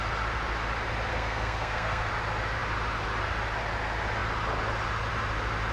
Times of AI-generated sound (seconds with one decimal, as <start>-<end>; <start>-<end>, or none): 1.1-2.1

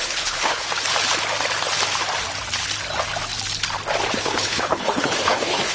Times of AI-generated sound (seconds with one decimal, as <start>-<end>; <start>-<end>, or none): 0.0-0.7; 4.1-5.7

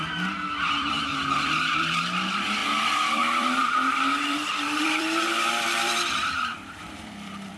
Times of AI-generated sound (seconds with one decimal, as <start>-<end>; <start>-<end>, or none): 0.0-2.0; 2.6-7.6